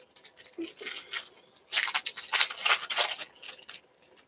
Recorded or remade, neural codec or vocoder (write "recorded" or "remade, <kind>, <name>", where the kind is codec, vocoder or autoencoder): recorded